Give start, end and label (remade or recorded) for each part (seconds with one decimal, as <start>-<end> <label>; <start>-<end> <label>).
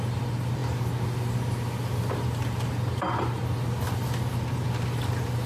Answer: 0.0-5.5 recorded